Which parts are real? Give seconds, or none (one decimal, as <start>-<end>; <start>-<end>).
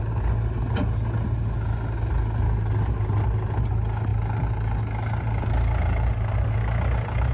0.0-7.3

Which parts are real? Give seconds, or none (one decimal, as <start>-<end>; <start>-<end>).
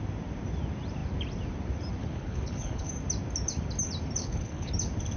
0.0-2.0; 2.9-4.2; 4.7-5.2